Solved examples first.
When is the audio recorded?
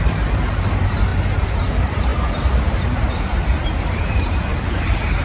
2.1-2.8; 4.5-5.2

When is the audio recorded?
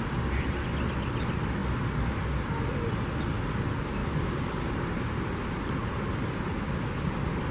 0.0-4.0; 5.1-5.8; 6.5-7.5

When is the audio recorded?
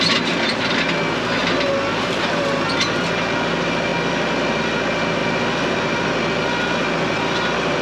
0.0-5.2; 6.1-7.8